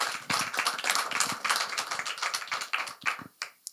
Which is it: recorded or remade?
recorded